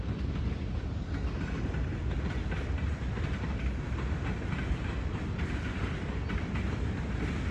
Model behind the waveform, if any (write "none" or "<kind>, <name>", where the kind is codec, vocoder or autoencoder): none